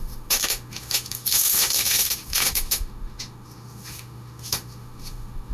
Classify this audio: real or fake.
fake